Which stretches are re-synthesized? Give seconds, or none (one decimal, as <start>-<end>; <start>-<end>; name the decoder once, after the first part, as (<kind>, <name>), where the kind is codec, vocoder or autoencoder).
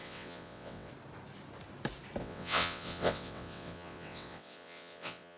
0.0-0.9 (vocoder, WaveNeXt); 2.2-5.4